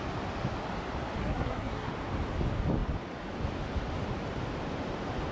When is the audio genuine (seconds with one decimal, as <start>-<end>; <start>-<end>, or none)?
0.0-1.2; 1.9-5.3